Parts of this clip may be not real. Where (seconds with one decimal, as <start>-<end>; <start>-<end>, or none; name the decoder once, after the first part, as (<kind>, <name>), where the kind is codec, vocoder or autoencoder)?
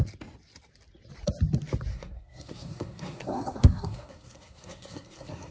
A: 1.9-5.5 (codec, SNAC)